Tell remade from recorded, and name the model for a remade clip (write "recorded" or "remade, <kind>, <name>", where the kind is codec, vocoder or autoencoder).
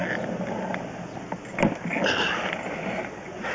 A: recorded